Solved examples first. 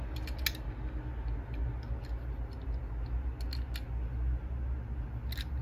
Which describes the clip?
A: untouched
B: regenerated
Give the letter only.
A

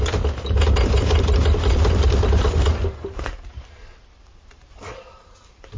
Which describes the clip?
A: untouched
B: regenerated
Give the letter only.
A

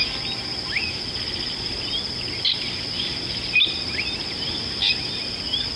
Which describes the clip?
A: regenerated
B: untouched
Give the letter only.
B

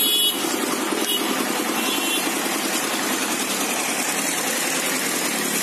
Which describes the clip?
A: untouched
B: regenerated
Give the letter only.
A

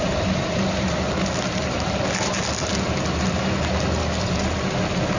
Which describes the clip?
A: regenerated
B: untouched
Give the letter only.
B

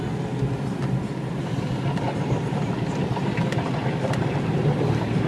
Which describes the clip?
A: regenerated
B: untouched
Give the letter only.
B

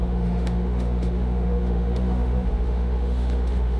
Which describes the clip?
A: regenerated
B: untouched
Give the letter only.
A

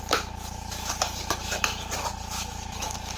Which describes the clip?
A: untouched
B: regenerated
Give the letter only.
B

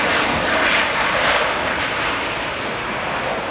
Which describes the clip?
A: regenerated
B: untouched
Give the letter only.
B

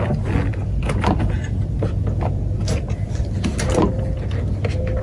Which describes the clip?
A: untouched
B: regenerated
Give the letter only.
A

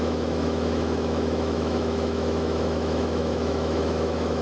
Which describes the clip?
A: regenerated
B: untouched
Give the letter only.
A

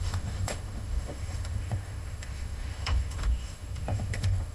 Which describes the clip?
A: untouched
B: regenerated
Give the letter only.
B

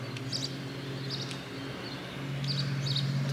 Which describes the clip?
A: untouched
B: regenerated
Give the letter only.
A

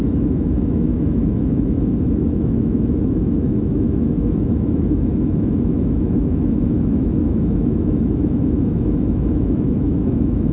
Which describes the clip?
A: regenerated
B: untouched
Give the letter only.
A